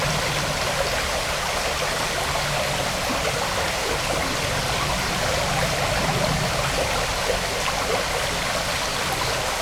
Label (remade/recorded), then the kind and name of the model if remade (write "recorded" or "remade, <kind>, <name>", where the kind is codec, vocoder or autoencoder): recorded